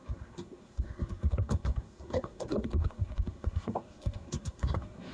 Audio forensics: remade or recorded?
remade